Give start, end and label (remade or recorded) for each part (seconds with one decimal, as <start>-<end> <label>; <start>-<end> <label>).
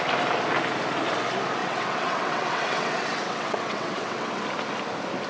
0.0-1.6 recorded; 1.6-4.4 remade; 4.4-5.3 recorded